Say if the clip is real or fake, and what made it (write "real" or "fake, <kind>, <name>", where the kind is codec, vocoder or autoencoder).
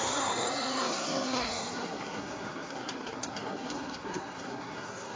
fake, codec, SNAC